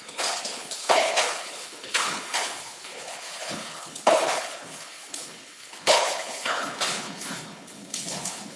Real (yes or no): no